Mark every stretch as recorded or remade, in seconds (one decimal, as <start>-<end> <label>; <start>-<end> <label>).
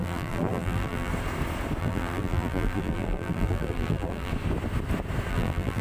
0.0-1.1 remade; 1.1-1.8 recorded; 1.8-4.3 remade; 4.3-5.3 recorded; 5.3-5.8 remade